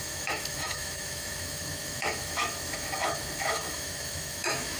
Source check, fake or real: fake